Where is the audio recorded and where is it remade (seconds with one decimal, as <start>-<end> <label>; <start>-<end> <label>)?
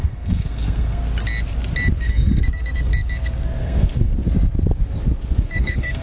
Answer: 0.0-1.0 remade; 1.0-2.0 recorded; 2.0-2.9 remade; 2.9-3.6 recorded; 3.6-4.1 remade; 4.1-5.3 recorded; 5.3-6.0 remade